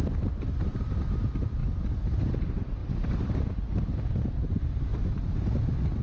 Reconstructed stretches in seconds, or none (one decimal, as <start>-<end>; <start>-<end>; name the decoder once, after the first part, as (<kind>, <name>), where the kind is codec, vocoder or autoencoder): 0.0-6.0 (vocoder, BigVGAN v2)